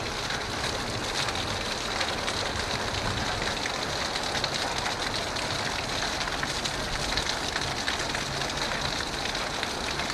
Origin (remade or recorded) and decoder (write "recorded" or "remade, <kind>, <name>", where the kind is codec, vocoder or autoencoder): recorded